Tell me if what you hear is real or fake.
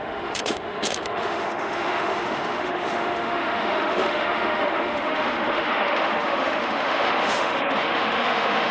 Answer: fake